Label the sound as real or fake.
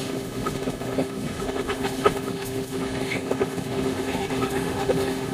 fake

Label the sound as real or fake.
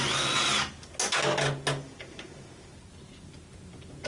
real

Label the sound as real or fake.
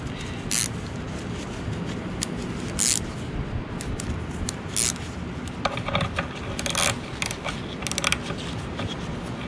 real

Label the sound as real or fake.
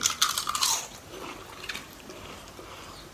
real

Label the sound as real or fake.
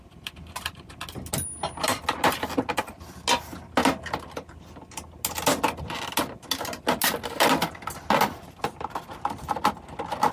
real